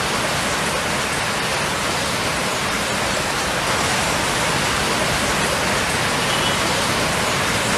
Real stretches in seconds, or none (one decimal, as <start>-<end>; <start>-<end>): 0.0-7.8